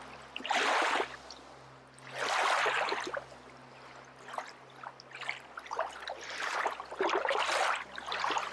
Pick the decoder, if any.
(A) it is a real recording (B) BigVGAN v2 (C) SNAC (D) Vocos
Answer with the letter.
A